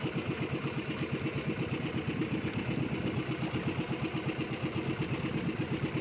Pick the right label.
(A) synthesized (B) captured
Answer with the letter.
B